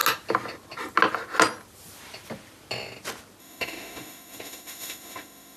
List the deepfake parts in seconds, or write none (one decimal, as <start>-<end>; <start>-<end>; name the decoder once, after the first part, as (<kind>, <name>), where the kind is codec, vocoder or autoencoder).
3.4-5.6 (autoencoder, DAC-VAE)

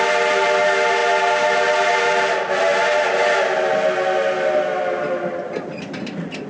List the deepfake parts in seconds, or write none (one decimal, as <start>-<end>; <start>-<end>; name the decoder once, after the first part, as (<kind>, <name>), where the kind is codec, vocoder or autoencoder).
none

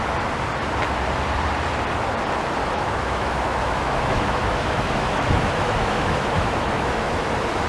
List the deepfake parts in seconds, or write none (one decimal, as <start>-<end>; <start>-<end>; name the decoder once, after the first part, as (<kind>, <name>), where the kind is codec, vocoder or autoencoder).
2.6-7.2 (autoencoder, DAC-VAE)